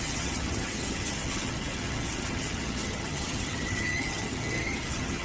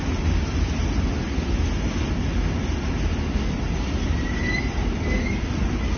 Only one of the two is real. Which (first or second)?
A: second